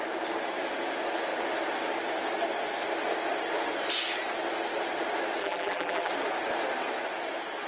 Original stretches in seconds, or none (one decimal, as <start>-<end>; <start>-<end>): 0.0-5.4; 6.1-7.7